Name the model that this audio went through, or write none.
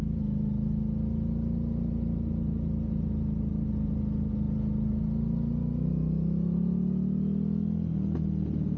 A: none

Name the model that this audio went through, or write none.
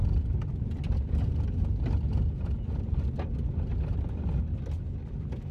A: none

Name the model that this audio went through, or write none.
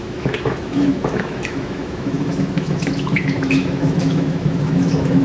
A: autoencoder, DAC-VAE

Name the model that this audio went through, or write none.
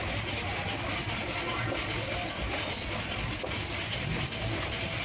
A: none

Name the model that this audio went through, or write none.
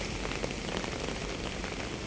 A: none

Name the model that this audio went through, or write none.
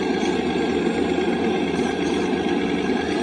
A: none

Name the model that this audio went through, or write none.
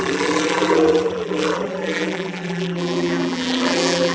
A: vocoder, BigVGAN v2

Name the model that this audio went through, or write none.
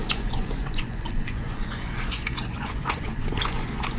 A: vocoder, Vocos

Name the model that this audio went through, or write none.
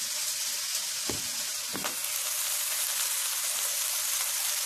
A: none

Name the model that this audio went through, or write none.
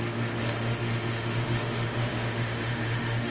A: autoencoder, DAC-VAE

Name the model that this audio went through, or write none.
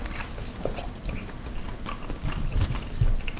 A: none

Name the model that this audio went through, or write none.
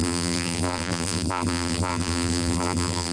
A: vocoder, BigVGAN v2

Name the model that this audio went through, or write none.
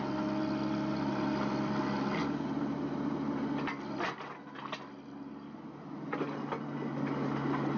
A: none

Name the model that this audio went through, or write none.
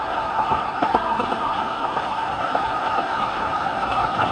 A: codec, SNAC